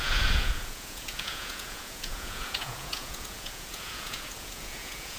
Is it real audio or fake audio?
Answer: fake